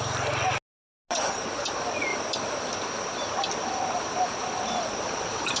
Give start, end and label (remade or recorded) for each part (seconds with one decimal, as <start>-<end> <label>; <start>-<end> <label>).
0.0-2.1 recorded; 2.1-5.6 remade